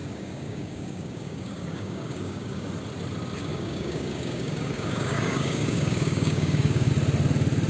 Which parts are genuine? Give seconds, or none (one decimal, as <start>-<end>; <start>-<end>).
2.7-3.5; 6.9-7.7